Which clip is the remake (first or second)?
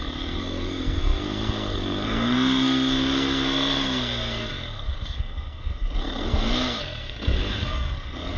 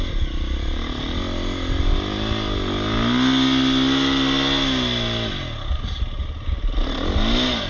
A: first